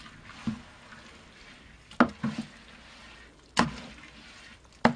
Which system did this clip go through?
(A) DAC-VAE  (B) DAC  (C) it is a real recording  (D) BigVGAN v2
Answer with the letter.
C